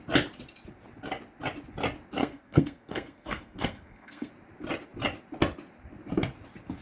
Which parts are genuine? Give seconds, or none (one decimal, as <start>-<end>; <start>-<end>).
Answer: 0.0-2.2; 4.3-6.8